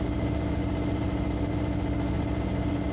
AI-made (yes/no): no